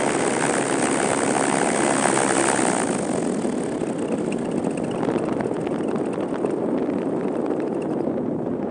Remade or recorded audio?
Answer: recorded